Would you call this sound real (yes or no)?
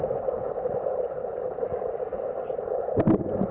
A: yes